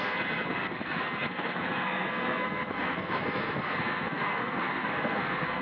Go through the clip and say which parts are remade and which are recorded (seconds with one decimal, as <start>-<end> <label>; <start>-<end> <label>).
0.0-5.6 remade